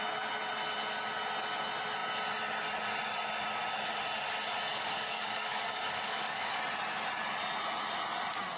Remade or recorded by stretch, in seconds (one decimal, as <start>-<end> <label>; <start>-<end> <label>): 0.0-4.7 recorded; 4.7-6.6 remade; 6.6-8.6 recorded